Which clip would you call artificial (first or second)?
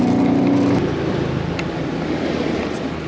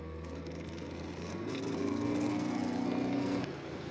second